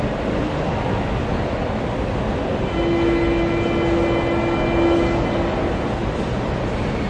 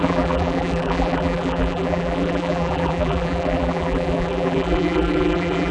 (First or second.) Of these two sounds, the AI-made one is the second